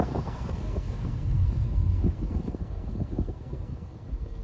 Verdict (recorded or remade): remade